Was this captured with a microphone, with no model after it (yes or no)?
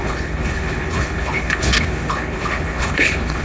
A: no